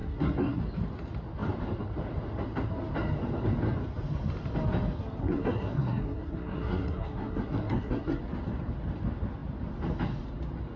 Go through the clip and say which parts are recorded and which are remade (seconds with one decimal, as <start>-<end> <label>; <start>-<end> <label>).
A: 0.0-0.6 remade; 0.6-5.2 recorded; 5.2-8.2 remade; 8.2-10.8 recorded